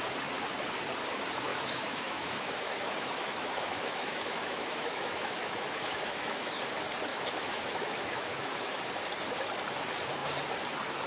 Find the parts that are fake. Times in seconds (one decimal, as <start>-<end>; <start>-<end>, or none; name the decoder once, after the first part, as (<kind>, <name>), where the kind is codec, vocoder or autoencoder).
1.5-6.6 (autoencoder, DAC-VAE); 7.1-8.8

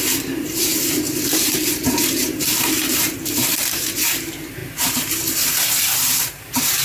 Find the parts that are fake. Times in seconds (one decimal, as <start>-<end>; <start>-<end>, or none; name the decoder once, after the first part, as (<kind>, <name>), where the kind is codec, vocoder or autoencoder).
0.0-6.8 (vocoder, BigVGAN v2)

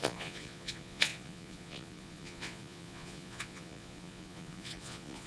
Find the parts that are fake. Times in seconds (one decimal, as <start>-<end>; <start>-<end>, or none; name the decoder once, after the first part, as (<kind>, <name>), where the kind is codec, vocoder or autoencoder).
0.0-5.3 (vocoder, Vocos)

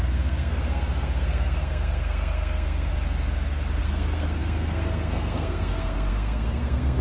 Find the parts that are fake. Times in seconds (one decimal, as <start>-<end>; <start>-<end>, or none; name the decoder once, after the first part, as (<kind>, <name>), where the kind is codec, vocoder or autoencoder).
0.0-2.9 (codec, SNAC); 3.8-7.0